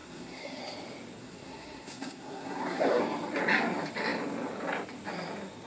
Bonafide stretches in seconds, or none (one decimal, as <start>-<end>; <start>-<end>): 0.6-1.2; 3.0-5.7